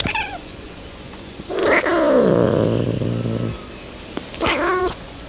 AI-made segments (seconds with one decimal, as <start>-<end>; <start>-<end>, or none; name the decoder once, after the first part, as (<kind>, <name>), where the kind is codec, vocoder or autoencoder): 0.0-1.6 (vocoder, Vocos); 4.8-5.3